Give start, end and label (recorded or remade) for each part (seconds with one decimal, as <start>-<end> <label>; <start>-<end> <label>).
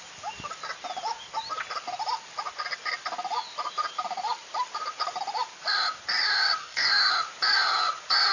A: 0.0-6.6 recorded; 6.6-7.1 remade; 7.1-8.3 recorded